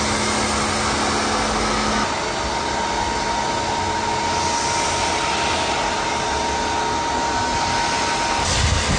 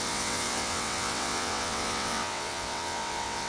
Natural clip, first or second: first